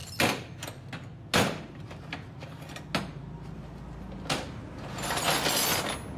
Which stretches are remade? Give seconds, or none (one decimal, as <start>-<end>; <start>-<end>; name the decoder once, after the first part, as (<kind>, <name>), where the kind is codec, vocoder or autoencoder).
none